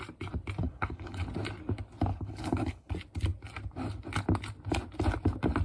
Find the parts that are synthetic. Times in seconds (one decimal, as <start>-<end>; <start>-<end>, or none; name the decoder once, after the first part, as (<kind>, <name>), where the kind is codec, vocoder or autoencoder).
0.6-1.3 (codec, HILCodec); 2.1-2.9